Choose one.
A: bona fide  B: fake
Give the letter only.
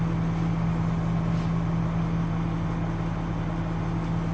A